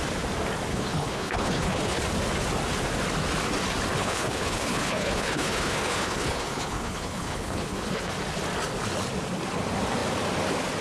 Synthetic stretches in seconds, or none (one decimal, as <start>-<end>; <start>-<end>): 0.7-2.0; 4.0-8.1